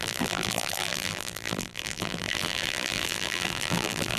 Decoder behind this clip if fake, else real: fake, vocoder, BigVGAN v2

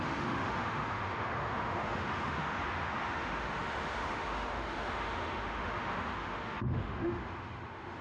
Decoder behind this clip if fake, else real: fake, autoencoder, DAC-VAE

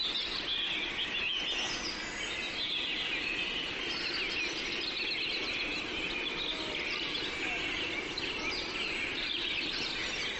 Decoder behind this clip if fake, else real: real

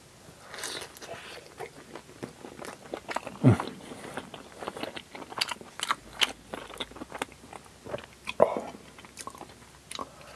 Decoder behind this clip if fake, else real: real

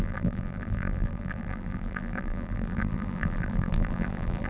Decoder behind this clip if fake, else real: fake, vocoder, BigVGAN v2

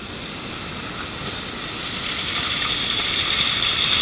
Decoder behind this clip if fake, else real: real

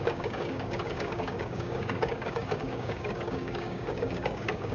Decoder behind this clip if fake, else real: fake, codec, DAC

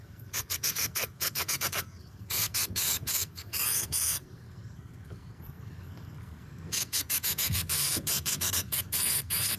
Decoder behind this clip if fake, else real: fake, codec, SNAC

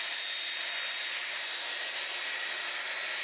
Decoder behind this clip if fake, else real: real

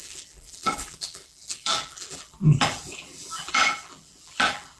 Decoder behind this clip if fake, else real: fake, vocoder, BigVGAN v2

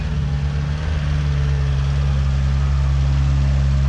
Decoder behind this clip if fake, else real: real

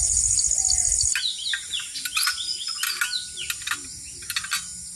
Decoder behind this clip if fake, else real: real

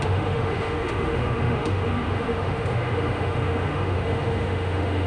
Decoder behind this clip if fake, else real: fake, autoencoder, DAC-VAE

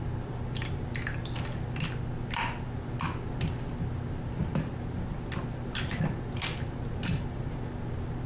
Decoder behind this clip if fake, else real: real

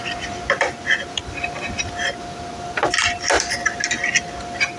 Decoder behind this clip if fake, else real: real